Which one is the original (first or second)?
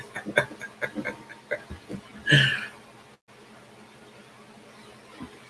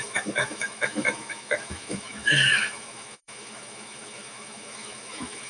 first